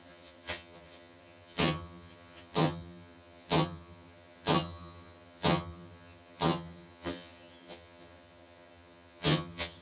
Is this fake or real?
fake